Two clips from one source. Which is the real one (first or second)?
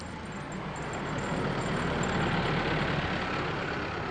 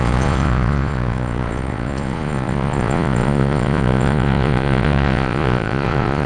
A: first